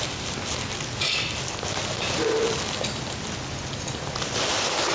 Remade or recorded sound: recorded